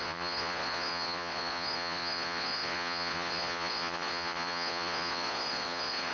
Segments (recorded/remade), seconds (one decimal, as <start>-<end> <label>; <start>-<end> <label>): 0.0-6.1 remade